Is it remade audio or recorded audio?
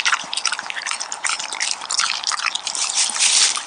remade